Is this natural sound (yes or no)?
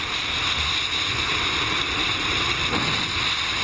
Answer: yes